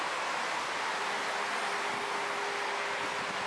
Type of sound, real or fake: real